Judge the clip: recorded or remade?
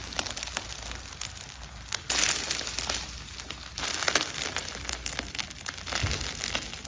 recorded